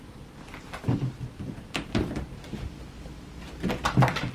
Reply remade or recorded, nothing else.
recorded